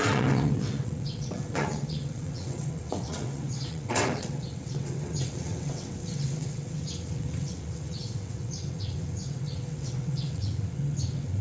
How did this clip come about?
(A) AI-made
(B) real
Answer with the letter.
A